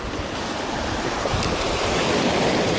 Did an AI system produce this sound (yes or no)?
no